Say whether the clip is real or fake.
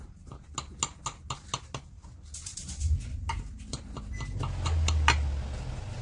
real